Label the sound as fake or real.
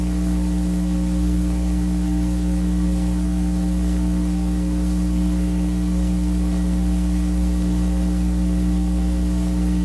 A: fake